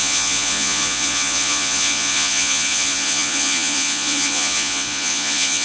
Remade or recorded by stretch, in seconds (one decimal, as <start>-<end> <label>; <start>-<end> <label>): 0.0-5.6 remade